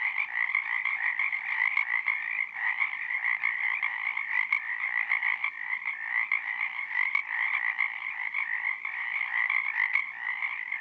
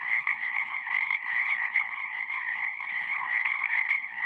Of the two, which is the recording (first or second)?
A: first